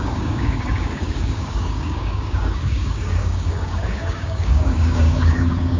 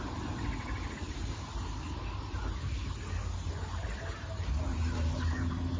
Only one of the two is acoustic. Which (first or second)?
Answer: second